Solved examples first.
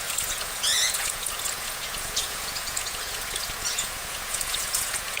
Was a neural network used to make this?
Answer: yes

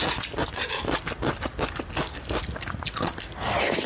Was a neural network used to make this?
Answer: no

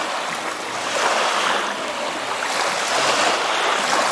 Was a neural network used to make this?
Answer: no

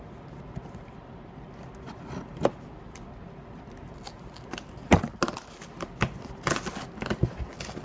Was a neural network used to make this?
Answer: no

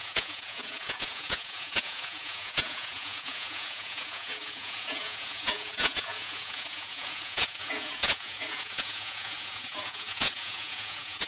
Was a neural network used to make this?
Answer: yes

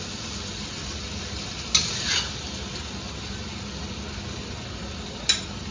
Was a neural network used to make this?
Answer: no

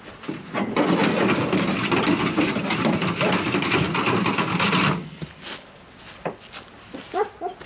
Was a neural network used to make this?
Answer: no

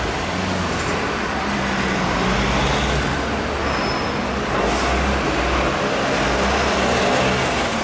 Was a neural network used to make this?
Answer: no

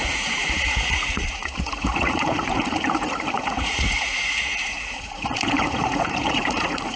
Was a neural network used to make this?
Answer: yes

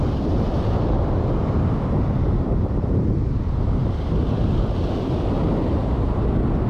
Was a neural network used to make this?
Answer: no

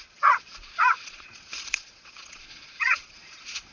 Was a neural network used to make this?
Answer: yes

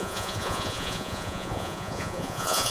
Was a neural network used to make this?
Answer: yes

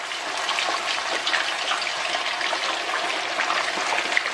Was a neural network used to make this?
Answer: no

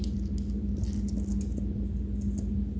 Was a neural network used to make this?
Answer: no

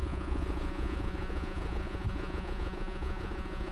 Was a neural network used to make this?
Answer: yes